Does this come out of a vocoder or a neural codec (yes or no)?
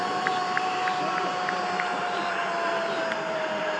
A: yes